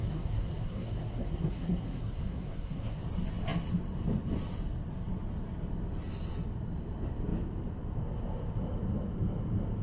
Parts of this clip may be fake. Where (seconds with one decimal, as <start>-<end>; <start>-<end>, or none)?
0.0-3.0

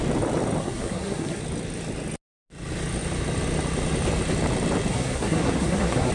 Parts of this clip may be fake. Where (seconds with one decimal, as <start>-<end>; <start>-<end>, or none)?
0.6-1.4; 4.9-6.1

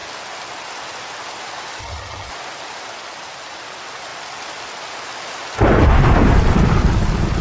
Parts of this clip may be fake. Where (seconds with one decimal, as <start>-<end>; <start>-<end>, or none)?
1.8-2.3

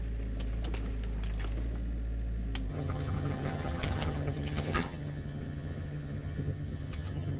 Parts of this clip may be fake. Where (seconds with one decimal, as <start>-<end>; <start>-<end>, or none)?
2.7-7.4

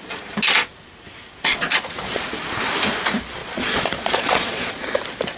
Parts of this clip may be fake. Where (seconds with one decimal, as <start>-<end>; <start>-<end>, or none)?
1.5-2.2; 3.4-4.9

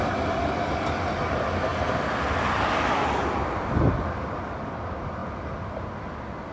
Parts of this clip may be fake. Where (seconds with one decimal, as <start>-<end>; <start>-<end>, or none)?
none